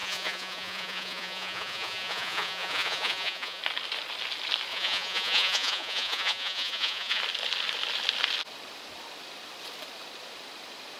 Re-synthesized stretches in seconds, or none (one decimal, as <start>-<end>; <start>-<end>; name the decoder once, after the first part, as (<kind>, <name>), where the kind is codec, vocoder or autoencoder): 0.0-3.6 (vocoder, Vocos); 4.7-7.2